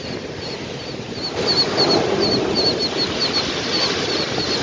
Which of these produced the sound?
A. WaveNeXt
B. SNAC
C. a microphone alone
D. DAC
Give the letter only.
C